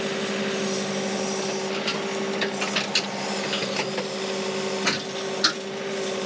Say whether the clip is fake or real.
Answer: real